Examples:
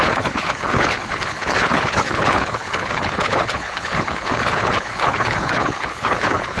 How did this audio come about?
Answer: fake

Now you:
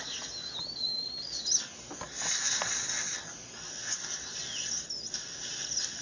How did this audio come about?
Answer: real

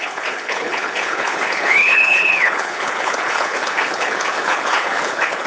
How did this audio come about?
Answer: fake